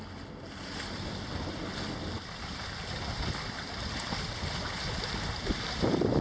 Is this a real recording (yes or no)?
yes